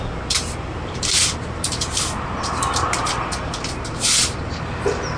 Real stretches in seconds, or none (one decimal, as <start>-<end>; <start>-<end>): 0.0-0.7; 3.4-5.2